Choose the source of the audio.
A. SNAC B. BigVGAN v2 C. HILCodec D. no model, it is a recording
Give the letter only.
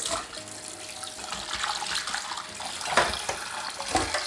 D